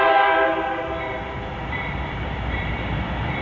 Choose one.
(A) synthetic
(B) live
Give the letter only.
A